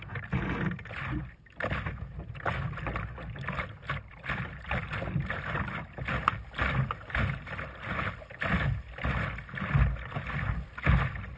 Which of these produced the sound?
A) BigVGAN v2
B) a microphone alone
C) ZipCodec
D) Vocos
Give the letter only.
B